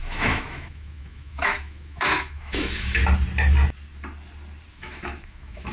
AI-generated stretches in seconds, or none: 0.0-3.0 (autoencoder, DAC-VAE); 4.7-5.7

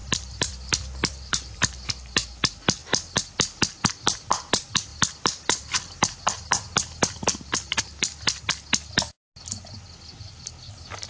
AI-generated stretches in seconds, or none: 0.0-1.9 (vocoder, BigVGAN v2); 4.9-8.4

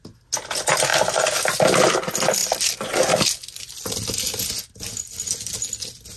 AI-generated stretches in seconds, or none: none